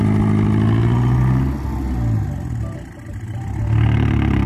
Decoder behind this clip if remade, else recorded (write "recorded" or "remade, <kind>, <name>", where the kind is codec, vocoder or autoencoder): recorded